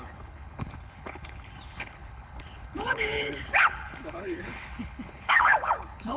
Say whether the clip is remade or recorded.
remade